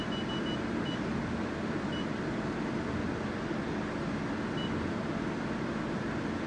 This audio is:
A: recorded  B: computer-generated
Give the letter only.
A